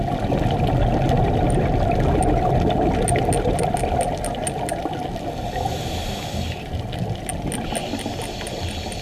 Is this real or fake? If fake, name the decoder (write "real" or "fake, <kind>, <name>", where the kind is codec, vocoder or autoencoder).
real